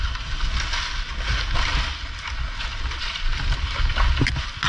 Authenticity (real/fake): real